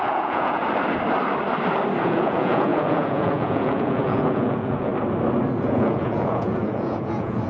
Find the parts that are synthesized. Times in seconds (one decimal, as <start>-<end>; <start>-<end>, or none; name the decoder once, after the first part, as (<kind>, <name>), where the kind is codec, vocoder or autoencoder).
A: 0.0-0.6 (vocoder, Vocos); 2.0-4.9; 5.7-7.5